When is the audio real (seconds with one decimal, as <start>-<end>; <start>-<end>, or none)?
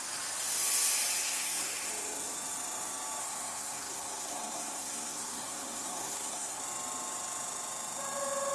0.0-1.2; 1.9-3.2; 6.6-8.5